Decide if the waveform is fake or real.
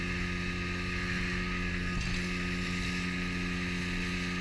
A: real